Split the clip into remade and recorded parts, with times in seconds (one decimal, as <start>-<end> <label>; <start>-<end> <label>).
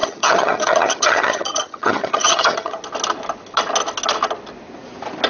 0.0-2.8 remade; 2.8-5.3 recorded